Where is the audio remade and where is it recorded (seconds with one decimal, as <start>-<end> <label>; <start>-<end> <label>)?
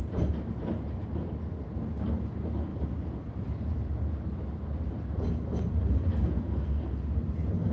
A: 0.0-6.1 recorded; 6.1-6.9 remade; 6.9-7.7 recorded